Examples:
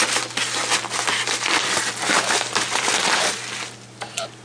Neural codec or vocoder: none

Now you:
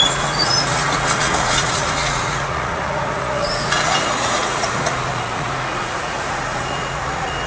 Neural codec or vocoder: vocoder, Vocos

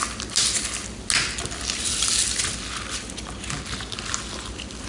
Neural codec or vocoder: none